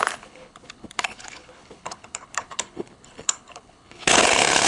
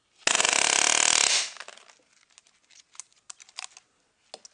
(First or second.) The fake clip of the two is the first